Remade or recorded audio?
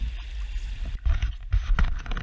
recorded